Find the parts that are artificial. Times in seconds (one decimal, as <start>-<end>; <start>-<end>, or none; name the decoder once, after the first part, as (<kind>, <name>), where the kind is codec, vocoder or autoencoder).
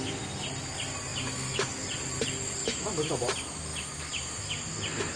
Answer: 1.1-1.7 (autoencoder, DAC-VAE); 2.6-3.1; 3.7-4.7